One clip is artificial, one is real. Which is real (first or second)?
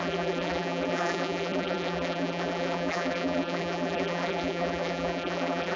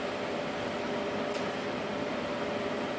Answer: second